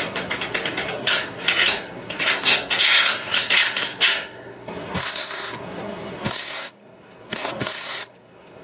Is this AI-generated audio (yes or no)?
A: yes